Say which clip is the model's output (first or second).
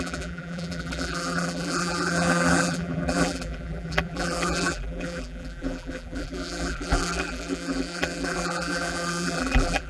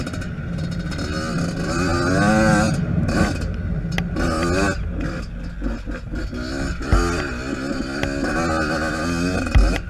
first